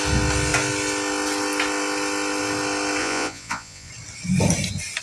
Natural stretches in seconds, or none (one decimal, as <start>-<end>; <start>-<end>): 0.0-3.0; 3.9-5.0